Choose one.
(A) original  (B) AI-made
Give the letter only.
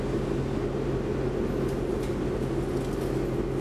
A